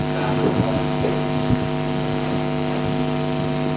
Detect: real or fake real